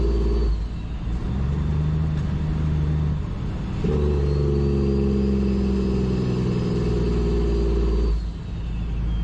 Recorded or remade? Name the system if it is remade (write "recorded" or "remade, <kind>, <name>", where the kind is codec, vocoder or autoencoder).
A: recorded